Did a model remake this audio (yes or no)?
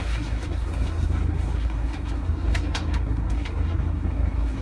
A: yes